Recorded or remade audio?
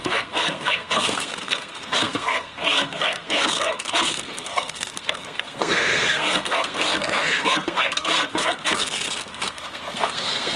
remade